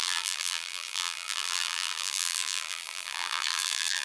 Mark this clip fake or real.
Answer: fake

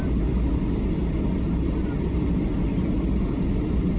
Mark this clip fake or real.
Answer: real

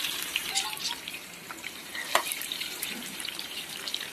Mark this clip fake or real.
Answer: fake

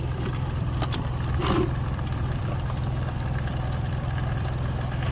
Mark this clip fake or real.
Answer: fake